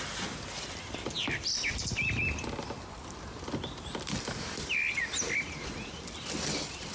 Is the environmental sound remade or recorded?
remade